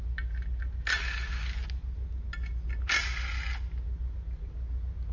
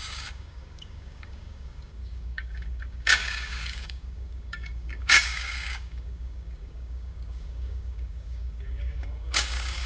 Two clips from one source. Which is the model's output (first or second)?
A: second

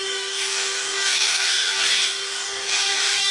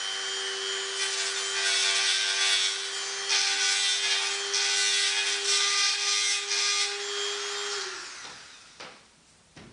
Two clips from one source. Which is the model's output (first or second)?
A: first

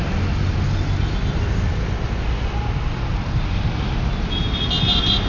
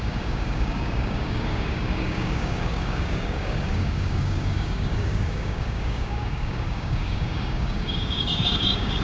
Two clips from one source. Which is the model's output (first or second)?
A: second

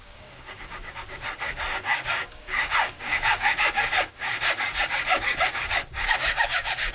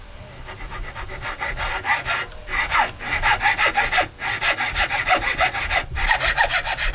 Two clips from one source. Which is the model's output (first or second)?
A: first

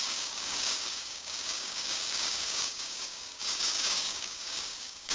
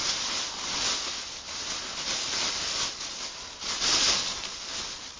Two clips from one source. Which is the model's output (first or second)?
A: first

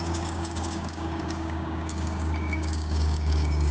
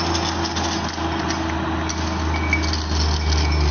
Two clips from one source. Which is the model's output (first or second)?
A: first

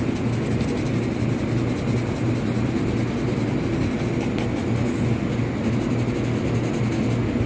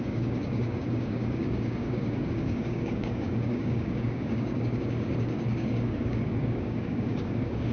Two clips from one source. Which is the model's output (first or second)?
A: second